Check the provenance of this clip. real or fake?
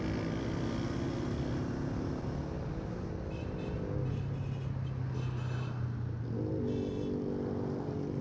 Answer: real